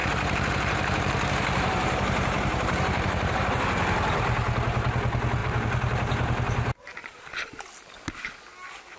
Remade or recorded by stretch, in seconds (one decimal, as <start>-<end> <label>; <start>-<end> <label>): 0.0-3.5 remade; 3.5-5.4 recorded; 5.4-7.5 remade; 7.5-9.0 recorded